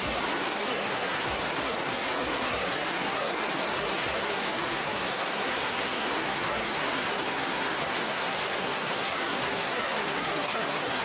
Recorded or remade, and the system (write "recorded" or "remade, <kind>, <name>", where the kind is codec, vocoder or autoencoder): remade, codec, SNAC